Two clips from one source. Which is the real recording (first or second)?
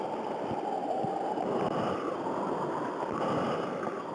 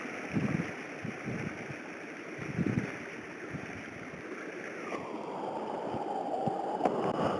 first